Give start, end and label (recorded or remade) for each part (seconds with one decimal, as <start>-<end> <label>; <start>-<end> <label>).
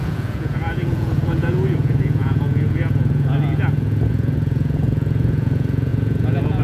0.0-6.6 remade